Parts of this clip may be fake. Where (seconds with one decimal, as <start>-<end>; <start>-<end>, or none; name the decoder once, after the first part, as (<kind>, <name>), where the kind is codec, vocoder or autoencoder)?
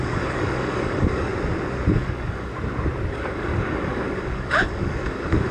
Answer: 0.0-1.3 (codec, DAC); 1.9-2.5; 3.1-5.5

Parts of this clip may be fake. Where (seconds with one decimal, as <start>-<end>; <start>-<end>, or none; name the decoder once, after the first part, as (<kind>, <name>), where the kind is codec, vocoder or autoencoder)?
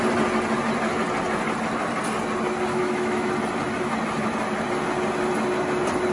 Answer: 2.7-3.3 (autoencoder, DAC-VAE)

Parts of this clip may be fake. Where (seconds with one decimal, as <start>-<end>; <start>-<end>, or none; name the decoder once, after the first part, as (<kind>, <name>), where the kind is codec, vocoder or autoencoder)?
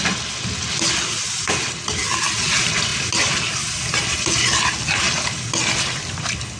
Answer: none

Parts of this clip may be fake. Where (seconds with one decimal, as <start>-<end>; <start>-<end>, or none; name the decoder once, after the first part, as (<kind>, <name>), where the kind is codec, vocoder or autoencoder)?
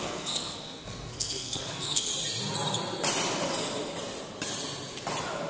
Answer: 0.0-2.1 (codec, SNAC)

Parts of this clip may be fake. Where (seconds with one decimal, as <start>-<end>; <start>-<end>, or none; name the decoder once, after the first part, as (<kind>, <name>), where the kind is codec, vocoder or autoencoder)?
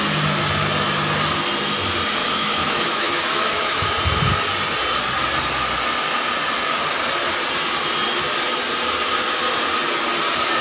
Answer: 2.2-3.9 (autoencoder, DAC-VAE)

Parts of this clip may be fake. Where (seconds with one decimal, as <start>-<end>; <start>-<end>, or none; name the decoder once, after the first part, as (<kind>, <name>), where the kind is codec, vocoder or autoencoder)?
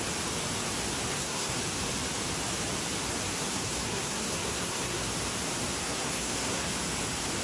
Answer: 1.1-1.6 (codec, SNAC); 3.4-5.1; 5.8-6.7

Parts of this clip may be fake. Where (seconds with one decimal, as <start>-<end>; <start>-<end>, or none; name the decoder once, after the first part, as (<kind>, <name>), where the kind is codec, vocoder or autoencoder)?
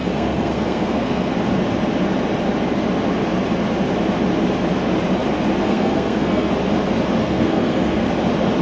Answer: 0.0-1.3 (codec, SNAC); 5.6-6.5; 7.2-8.1